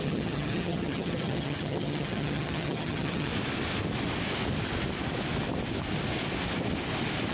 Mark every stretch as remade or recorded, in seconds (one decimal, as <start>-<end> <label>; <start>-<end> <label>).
0.0-3.3 remade; 3.3-7.3 recorded